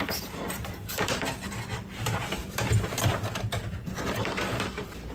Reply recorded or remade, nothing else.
remade